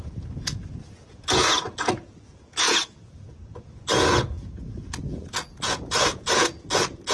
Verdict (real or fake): fake